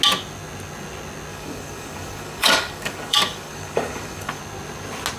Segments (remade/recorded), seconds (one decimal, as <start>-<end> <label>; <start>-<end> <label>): 0.0-1.3 recorded; 1.3-4.4 remade; 4.4-5.2 recorded